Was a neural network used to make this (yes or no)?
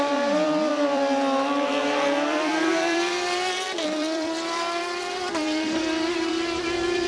yes